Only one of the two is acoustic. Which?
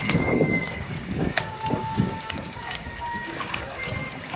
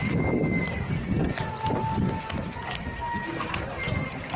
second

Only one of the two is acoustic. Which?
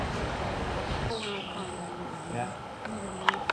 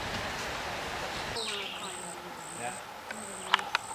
second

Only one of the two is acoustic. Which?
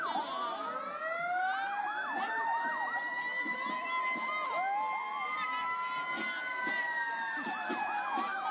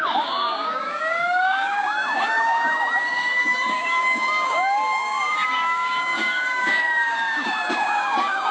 first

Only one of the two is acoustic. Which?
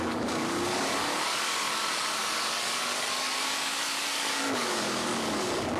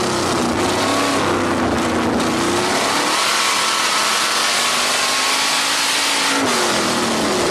second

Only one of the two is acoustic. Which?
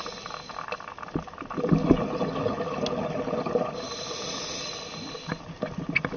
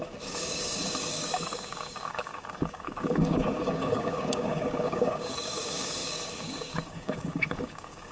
first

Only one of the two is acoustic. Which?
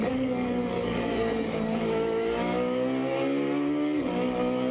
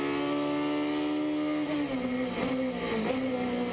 second